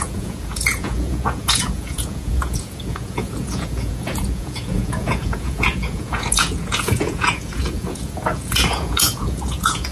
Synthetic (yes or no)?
yes